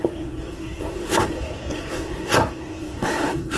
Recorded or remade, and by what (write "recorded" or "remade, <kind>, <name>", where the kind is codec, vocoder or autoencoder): remade, codec, SNAC